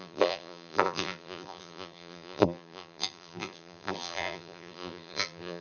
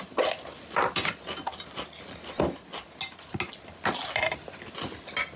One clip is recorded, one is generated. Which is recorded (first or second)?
second